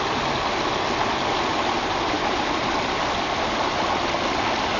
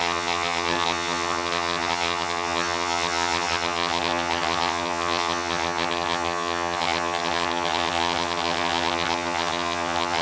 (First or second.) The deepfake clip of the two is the second